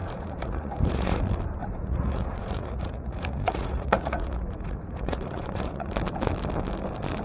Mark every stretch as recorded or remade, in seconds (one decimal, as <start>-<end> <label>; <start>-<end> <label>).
0.0-1.2 remade; 1.2-1.6 recorded; 1.6-5.9 remade; 5.9-7.2 recorded